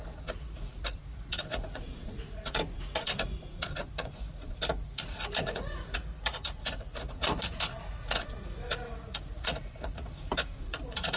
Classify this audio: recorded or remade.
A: remade